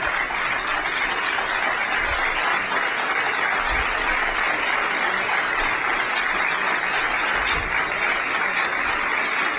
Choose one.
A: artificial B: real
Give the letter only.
B